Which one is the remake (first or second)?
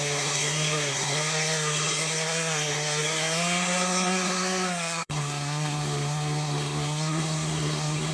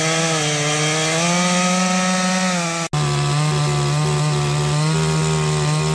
first